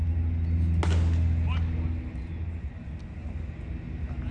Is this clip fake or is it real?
real